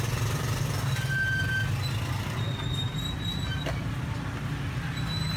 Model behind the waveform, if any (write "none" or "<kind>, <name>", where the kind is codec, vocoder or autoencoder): none